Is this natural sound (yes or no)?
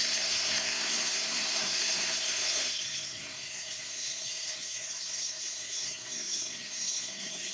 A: no